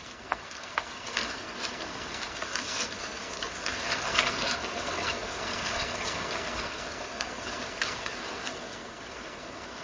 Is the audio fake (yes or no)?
yes